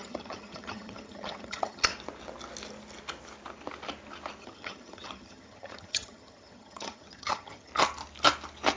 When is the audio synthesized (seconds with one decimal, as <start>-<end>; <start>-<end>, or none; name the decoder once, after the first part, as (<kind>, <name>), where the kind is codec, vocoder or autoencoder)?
0.0-1.9 (vocoder, HiFi-GAN); 4.4-7.7

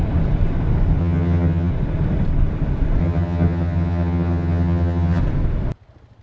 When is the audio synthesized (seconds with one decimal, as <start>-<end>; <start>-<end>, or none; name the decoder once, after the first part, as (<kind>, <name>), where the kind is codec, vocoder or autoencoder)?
1.0-1.7 (vocoder, HiFi-GAN); 3.0-5.2

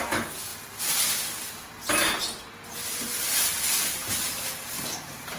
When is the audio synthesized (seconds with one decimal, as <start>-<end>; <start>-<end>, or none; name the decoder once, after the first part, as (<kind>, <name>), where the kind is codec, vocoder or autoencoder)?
3.2-5.4 (vocoder, BigVGAN v2)